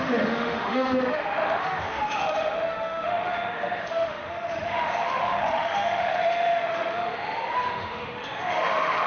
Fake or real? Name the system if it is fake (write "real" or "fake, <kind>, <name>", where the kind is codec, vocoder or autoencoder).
fake, autoencoder, DAC-VAE